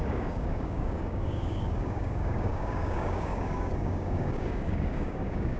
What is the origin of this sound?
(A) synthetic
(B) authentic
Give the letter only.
A